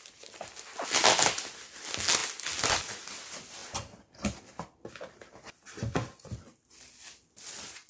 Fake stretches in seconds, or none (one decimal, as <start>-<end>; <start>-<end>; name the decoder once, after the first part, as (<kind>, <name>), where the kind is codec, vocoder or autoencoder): none